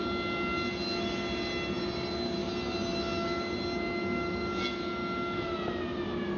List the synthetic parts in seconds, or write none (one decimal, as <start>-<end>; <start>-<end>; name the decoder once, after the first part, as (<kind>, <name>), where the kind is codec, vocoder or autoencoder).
none